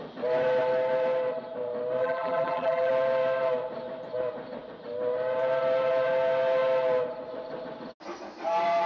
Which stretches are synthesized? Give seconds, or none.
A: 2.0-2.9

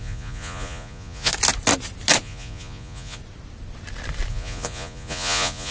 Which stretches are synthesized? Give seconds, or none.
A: 0.0-1.3; 2.2-3.2; 4.3-5.7

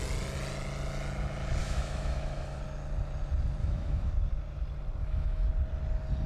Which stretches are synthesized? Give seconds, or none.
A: 1.6-2.6; 3.6-4.1; 5.0-5.5

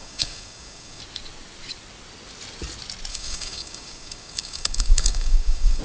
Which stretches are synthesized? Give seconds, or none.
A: 0.0-1.0; 3.1-5.8